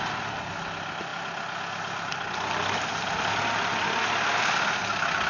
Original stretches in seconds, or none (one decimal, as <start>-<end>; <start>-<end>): 0.0-5.3